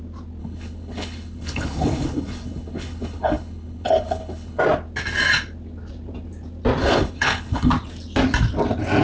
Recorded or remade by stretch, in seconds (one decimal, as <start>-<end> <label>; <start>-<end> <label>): 0.0-0.4 recorded; 0.4-4.6 remade; 4.6-6.8 recorded; 6.8-7.7 remade; 7.7-9.0 recorded